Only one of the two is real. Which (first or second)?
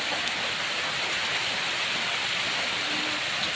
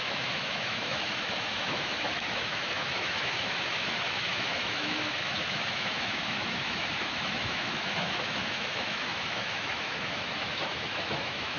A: first